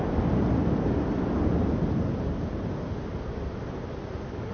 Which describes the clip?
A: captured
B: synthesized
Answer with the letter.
A